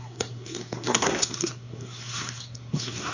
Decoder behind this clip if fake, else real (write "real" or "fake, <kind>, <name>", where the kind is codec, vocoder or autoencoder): fake, codec, SNAC